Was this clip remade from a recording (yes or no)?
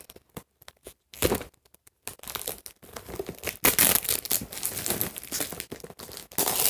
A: no